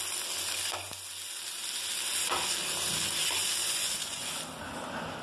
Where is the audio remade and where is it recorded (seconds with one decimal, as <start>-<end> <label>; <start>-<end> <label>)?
0.0-3.6 recorded; 3.6-4.3 remade; 4.3-5.2 recorded